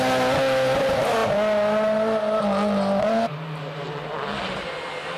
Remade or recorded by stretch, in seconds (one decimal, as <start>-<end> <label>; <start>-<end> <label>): 0.0-5.2 recorded